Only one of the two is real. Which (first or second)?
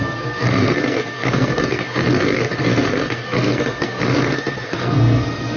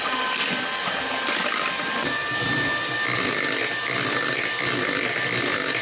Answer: second